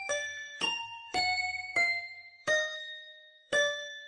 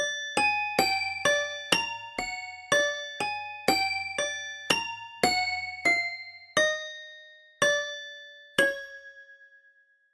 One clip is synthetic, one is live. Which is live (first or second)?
second